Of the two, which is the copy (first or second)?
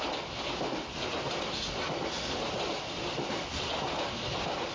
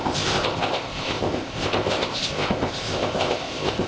second